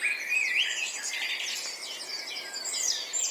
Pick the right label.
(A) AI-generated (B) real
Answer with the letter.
B